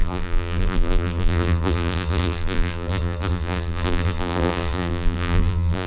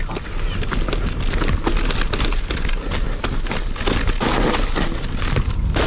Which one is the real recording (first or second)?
second